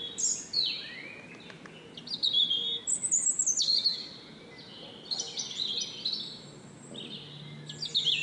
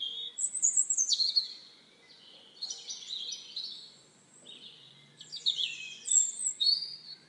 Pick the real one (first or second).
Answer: first